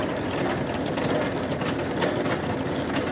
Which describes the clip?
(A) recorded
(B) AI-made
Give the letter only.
A